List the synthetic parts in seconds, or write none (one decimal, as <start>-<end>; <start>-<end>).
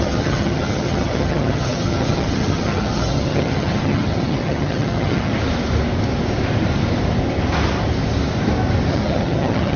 0.0-5.3; 8.9-9.8